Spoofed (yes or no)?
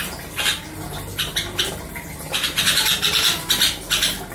no